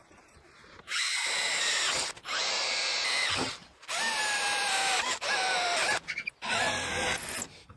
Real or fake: fake